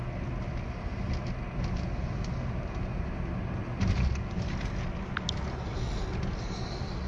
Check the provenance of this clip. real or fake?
real